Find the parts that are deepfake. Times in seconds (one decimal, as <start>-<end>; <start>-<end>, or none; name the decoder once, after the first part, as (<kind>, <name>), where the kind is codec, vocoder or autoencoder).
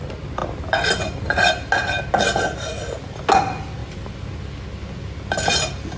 none